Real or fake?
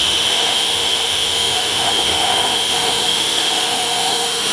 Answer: fake